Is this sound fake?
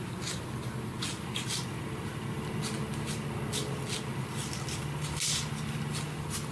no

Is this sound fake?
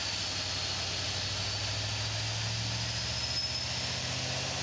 no